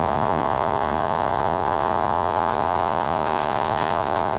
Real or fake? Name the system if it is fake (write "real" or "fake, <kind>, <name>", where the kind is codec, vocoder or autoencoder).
fake, vocoder, Vocos